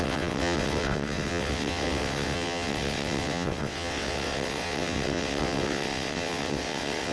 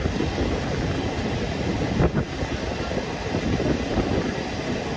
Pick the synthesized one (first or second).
first